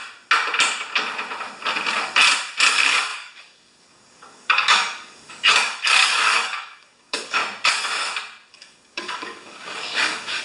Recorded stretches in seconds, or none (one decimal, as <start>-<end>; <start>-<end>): 0.0-2.7; 7.4-8.5